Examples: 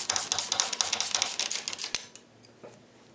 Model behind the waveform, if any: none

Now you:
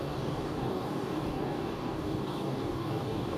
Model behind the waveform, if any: codec, DAC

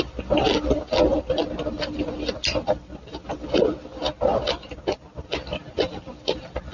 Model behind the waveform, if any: none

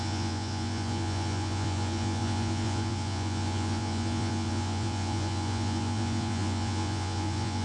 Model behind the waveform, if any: vocoder, Vocos